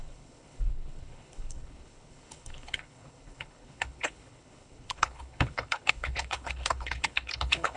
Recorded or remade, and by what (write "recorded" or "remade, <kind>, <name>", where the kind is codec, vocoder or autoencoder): remade, codec, HILCodec